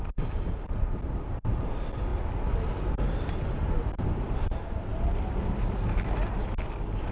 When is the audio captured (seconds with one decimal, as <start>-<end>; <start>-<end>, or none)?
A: 0.0-7.1